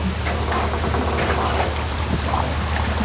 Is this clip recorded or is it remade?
recorded